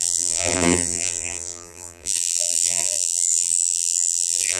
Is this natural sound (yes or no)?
no